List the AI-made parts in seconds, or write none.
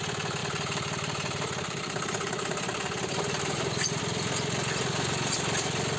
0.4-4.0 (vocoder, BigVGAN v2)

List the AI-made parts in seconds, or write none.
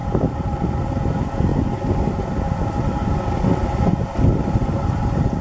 none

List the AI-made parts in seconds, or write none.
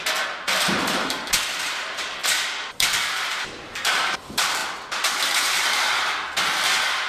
0.0-4.6 (vocoder, BigVGAN v2)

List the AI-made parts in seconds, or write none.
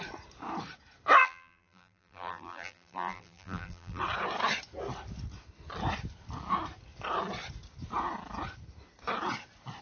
1.2-4.0 (vocoder, BigVGAN v2)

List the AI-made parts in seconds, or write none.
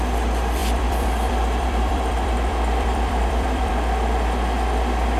0.6-3.7 (vocoder, BigVGAN v2)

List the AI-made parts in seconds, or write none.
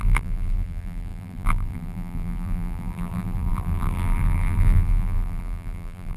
0.0-6.2 (vocoder, BigVGAN v2)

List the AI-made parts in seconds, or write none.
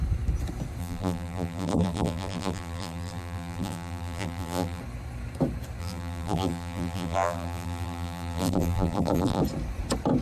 0.8-4.8 (vocoder, BigVGAN v2); 5.8-9.4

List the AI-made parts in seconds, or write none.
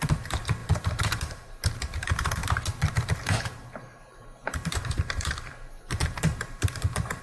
0.0-2.4 (vocoder, BigVGAN v2); 2.9-7.2